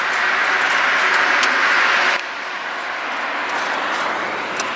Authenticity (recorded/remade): recorded